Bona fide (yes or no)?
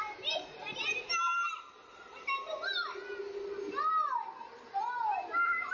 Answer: yes